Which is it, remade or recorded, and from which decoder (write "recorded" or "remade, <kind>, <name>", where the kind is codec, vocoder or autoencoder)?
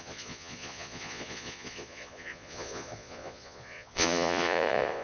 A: remade, vocoder, Vocos